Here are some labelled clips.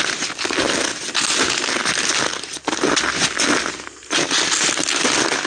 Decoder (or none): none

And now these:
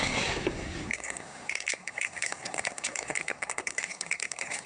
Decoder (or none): codec, SNAC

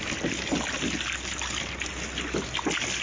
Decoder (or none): none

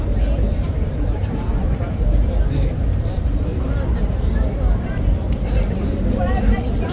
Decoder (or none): vocoder, BigVGAN v2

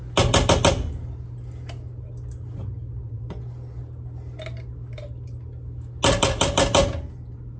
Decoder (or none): none